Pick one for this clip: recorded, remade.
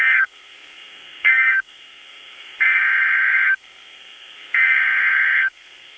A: remade